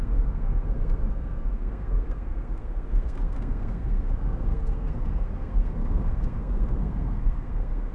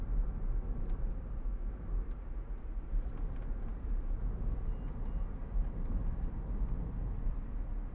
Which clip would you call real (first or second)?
second